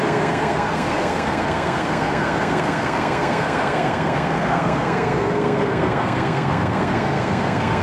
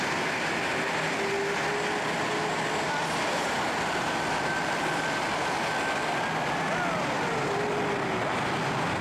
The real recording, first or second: second